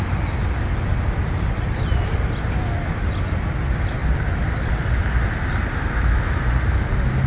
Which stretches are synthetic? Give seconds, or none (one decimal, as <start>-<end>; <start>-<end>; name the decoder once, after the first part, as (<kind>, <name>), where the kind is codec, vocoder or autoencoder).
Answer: 4.0-4.7 (vocoder, BigVGAN v2)